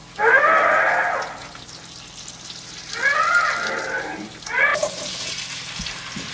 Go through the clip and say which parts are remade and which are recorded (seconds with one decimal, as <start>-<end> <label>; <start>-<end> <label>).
0.0-4.7 recorded; 4.7-5.2 remade; 5.2-6.3 recorded